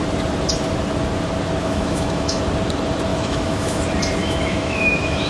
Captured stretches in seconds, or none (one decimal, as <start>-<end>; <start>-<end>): 0.0-1.6; 2.4-3.1; 3.8-4.2